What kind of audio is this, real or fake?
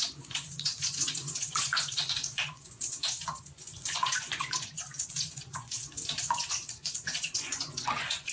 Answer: fake